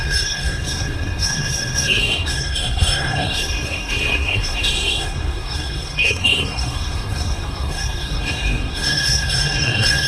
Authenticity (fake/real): fake